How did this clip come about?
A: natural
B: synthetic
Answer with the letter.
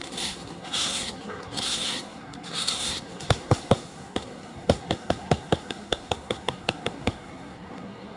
B